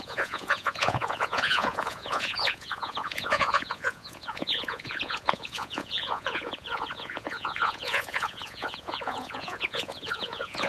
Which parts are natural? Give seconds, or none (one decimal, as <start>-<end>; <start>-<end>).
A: none